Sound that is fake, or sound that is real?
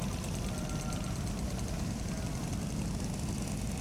real